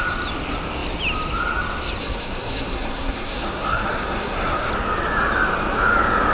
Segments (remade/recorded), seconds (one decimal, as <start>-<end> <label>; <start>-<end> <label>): 0.0-2.0 recorded; 2.0-4.7 remade; 4.7-6.3 recorded